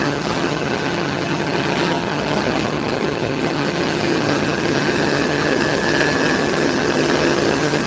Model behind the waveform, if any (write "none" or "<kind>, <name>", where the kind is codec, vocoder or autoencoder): vocoder, HiFi-GAN